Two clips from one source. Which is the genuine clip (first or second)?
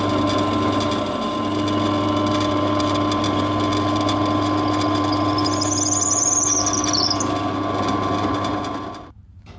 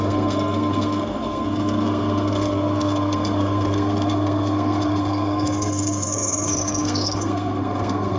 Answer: first